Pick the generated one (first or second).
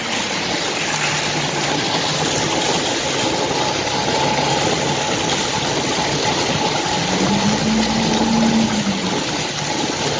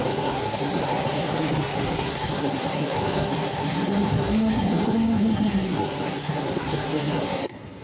second